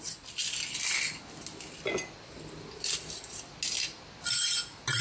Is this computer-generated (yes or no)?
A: no